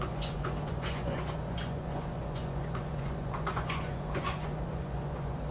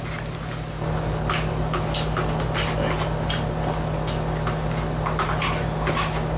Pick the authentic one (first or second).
second